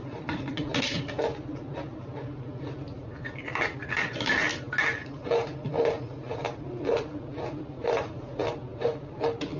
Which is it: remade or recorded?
remade